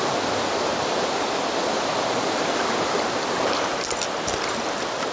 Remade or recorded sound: recorded